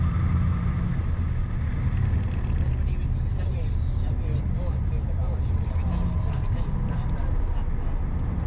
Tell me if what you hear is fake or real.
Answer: real